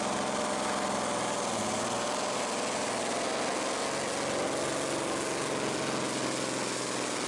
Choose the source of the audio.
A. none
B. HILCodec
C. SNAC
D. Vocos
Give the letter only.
A